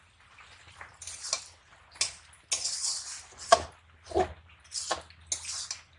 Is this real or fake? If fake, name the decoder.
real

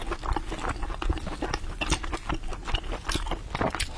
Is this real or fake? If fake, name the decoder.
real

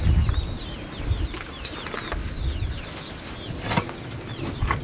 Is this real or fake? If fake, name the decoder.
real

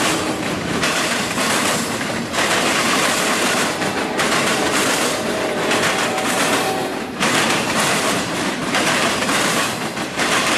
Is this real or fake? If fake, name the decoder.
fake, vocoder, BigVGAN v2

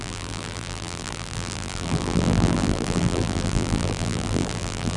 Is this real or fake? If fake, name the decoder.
fake, vocoder, BigVGAN v2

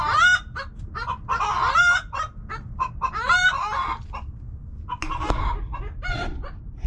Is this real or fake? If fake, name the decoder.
real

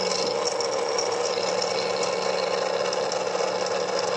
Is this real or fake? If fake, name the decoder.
real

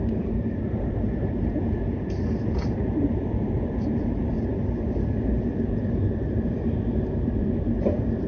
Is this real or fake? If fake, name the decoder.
fake, vocoder, BigVGAN v2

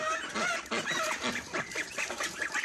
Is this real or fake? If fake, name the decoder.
real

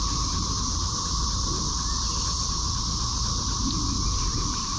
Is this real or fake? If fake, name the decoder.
fake, vocoder, BigVGAN v2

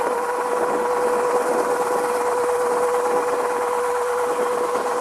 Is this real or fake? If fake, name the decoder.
real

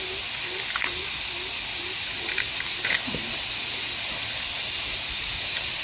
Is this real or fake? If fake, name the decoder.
real